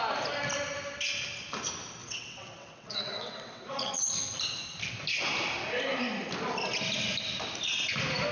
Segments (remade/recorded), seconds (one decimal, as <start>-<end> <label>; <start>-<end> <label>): 0.0-2.0 recorded; 2.0-4.0 remade; 4.0-8.3 recorded